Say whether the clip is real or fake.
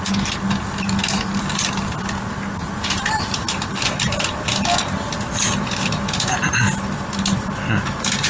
real